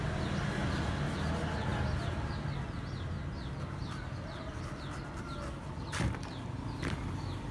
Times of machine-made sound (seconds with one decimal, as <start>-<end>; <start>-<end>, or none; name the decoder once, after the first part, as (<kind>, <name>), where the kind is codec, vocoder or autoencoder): none